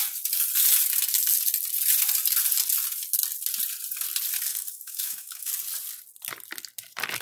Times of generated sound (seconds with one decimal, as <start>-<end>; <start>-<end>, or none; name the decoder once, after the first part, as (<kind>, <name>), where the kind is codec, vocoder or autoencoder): 4.5-5.5 (autoencoder, DAC-VAE)